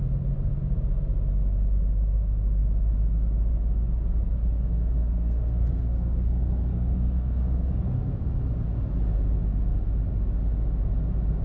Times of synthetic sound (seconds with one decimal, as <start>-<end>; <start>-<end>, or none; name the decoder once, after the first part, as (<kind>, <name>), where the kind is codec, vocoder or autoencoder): 5.0-7.7 (codec, SNAC)